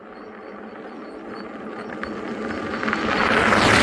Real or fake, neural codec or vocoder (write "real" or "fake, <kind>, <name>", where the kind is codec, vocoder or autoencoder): real